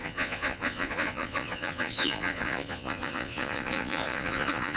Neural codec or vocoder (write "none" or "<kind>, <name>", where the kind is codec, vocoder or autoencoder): vocoder, Vocos